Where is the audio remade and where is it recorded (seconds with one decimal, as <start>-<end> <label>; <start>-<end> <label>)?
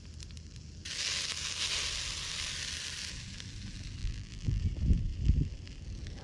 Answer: 0.0-4.0 recorded; 4.0-4.6 remade; 4.6-6.2 recorded